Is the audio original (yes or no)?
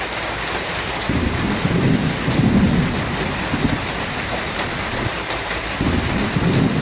yes